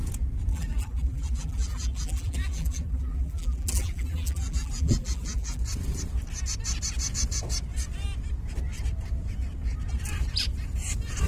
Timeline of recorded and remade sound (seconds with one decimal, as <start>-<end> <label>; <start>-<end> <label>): 0.0-0.5 recorded; 0.5-5.6 remade; 5.6-11.3 recorded